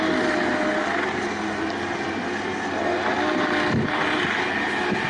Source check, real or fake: real